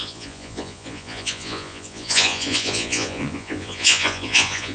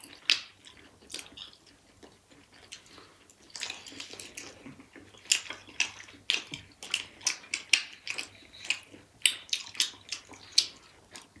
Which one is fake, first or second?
first